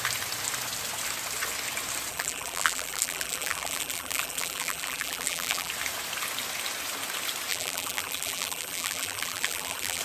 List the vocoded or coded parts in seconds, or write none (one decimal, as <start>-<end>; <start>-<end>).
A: 2.1-5.7; 7.5-10.0